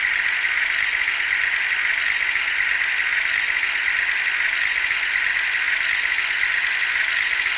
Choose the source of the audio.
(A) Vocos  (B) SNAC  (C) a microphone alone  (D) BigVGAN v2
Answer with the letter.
C